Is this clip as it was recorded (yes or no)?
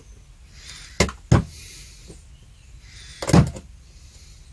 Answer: yes